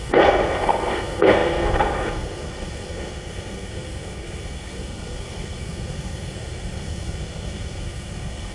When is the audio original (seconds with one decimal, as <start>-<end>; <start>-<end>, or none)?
none

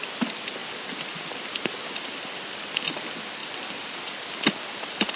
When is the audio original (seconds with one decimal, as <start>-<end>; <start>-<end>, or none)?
0.0-5.2